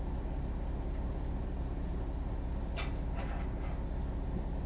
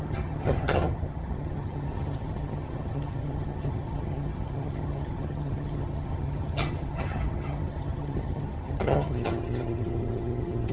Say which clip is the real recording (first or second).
first